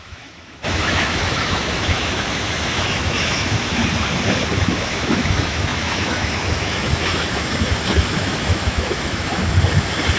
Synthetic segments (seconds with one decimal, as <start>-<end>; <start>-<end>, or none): 0.0-3.8; 4.5-9.3